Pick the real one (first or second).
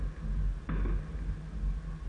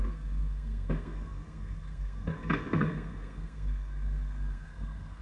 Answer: first